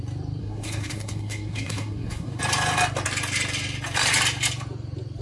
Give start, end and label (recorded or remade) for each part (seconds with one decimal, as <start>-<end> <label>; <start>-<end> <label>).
0.0-0.4 recorded; 0.4-2.4 remade; 2.4-5.2 recorded

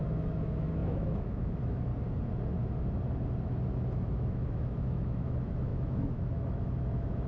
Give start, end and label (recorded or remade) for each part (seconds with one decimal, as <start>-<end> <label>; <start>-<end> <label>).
0.0-1.9 remade; 1.9-3.9 recorded; 3.9-7.3 remade

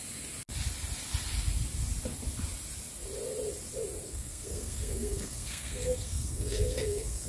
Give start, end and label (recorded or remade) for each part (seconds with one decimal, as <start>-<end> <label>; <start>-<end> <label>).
0.0-4.0 recorded; 4.0-7.3 remade

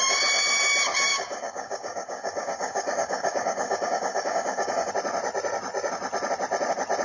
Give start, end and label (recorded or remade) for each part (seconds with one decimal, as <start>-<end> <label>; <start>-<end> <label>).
0.0-1.1 recorded; 1.1-4.9 remade; 4.9-7.0 recorded

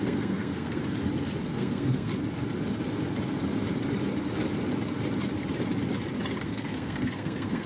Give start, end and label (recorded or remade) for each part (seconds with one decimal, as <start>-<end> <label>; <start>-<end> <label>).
0.0-0.8 remade; 0.8-1.5 recorded; 1.5-2.1 remade; 2.1-6.4 recorded; 6.4-7.7 remade

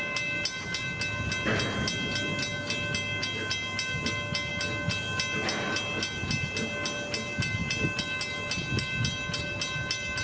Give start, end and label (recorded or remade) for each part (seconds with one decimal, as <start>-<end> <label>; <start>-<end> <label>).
0.0-10.2 recorded

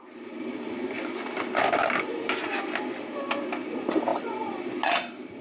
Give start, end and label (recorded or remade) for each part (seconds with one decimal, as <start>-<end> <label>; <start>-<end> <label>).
0.0-5.4 recorded

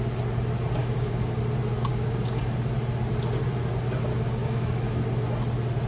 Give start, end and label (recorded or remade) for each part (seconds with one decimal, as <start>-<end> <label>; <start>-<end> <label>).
0.0-0.8 recorded; 0.8-1.4 remade; 1.4-1.9 recorded; 1.9-2.4 remade; 2.4-4.1 recorded; 4.1-4.8 remade; 4.8-5.9 recorded